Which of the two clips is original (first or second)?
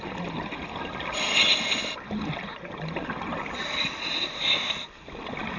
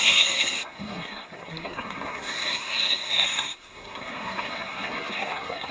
first